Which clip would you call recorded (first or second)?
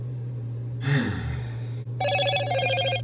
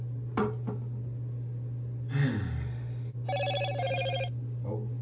second